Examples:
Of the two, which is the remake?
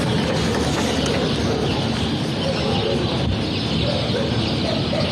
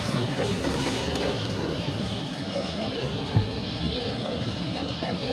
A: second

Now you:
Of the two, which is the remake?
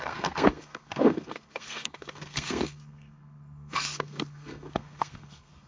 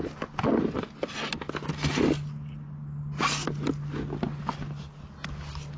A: first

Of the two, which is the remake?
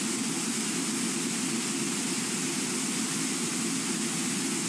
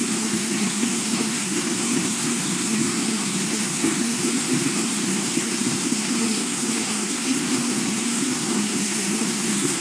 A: second